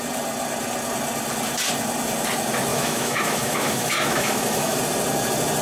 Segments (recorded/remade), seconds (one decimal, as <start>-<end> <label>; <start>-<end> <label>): 0.0-2.7 recorded; 2.7-4.8 remade; 4.8-5.6 recorded